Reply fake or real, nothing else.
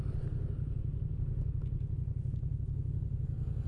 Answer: real